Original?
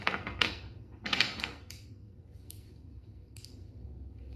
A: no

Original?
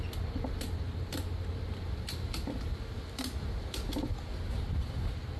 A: yes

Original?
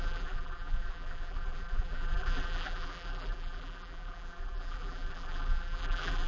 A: no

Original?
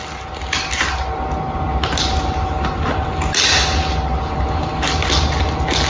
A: yes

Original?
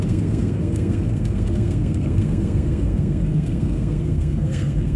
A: no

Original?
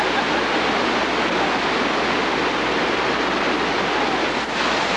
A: yes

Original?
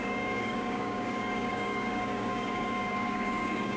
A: no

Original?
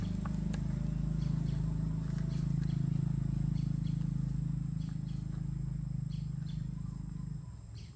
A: yes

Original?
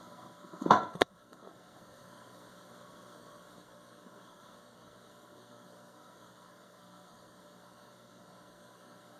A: no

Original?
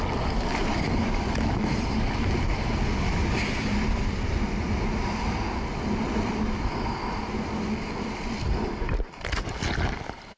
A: yes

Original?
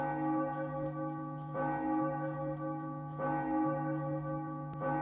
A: yes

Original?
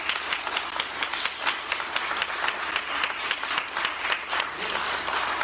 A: yes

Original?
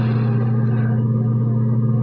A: yes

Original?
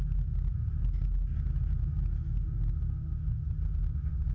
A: yes